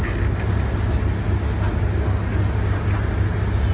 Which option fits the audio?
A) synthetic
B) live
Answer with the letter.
B